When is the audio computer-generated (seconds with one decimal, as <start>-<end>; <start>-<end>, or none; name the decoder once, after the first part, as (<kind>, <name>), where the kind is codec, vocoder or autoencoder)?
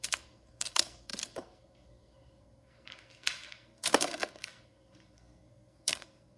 0.0-6.4 (codec, SNAC)